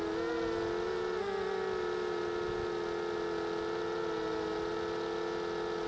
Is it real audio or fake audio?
real